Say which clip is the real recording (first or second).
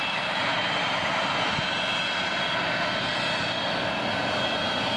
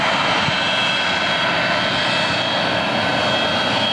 second